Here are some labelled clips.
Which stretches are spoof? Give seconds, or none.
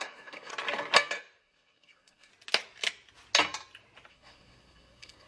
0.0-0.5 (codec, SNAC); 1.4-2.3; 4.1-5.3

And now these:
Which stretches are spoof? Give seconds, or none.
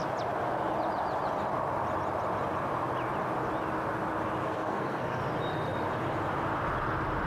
4.4-5.2 (codec, SNAC)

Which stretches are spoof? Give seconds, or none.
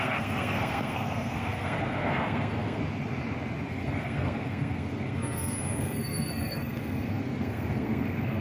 0.0-2.8 (codec, SNAC); 3.7-8.4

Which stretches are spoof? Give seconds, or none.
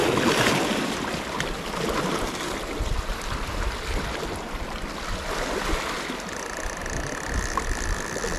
none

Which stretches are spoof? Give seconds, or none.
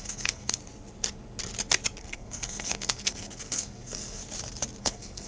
0.0-0.6 (codec, SNAC); 2.0-4.2; 4.8-5.3